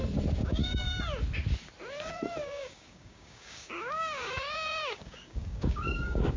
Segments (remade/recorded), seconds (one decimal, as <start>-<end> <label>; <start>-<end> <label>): 0.0-0.4 recorded; 0.4-1.0 remade; 1.0-2.4 recorded; 2.4-6.4 remade